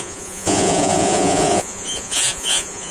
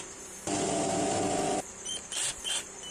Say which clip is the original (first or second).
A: second